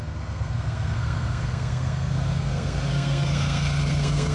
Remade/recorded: remade